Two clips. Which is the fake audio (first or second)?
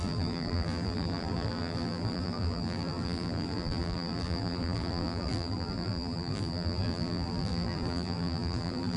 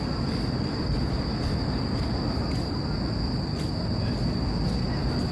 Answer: first